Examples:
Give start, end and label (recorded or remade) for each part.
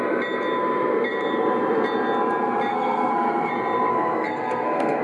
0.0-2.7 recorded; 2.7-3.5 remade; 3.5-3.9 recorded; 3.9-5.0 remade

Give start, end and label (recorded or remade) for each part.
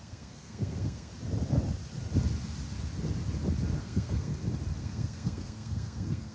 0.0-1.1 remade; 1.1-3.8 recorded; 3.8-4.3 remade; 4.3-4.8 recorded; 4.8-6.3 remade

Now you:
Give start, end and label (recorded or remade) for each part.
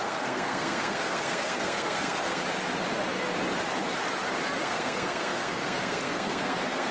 0.0-2.4 remade; 2.4-4.6 recorded; 4.6-6.9 remade